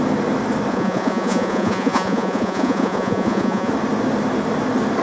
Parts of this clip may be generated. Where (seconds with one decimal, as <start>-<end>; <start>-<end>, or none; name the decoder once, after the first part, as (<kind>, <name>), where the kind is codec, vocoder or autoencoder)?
0.7-3.7 (vocoder, Vocos)